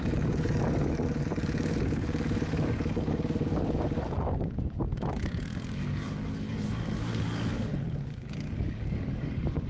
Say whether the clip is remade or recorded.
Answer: remade